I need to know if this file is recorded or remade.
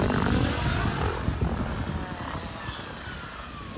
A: recorded